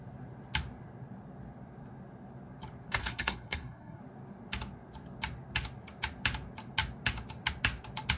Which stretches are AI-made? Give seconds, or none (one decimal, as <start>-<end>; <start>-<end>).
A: 3.0-4.0

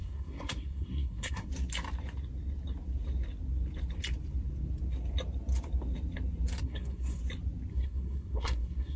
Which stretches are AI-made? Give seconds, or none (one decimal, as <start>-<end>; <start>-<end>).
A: 0.0-1.5; 6.6-7.2; 7.7-9.0

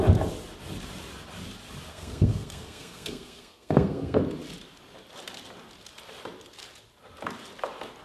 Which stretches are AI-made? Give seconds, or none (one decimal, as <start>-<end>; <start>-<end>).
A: 1.9-4.2